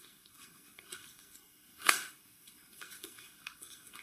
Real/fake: fake